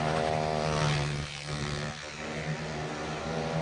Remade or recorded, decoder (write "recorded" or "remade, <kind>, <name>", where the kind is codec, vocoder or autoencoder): recorded